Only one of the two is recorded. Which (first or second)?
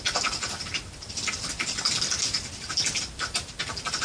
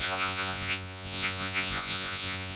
first